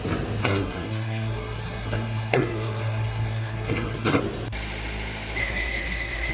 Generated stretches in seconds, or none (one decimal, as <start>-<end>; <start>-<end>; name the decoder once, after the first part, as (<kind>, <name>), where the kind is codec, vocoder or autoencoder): 0.4-4.2 (codec, SNAC); 5.4-6.3